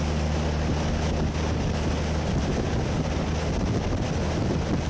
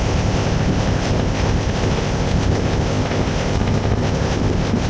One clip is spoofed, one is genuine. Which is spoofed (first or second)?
second